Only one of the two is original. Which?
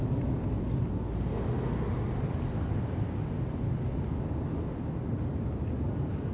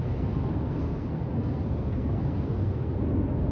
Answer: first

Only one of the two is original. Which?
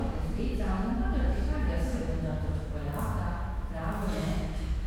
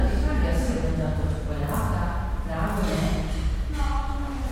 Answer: second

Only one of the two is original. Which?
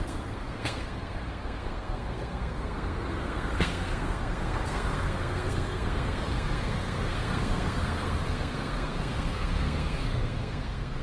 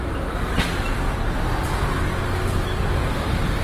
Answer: second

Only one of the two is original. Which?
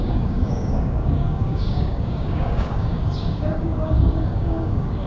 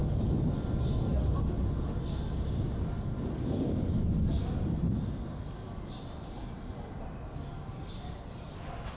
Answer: second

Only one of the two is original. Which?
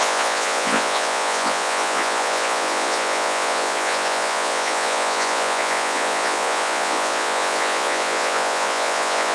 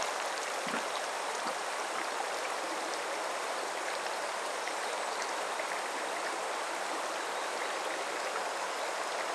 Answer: second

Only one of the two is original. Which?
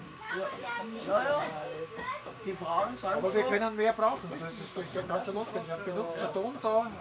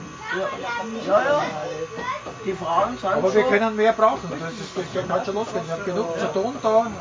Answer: second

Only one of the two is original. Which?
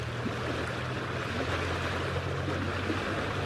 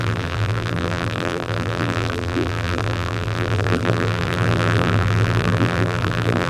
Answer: first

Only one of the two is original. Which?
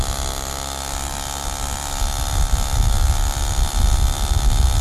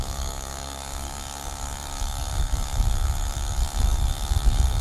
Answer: first